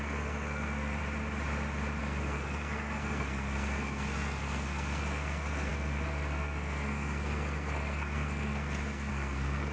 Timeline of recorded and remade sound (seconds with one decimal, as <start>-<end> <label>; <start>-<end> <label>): 0.0-1.0 remade; 1.0-2.0 recorded; 2.0-9.7 remade